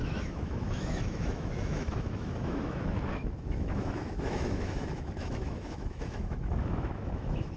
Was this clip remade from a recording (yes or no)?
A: yes